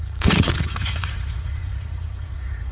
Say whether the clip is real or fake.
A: fake